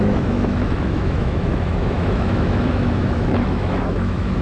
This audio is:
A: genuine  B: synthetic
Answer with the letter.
B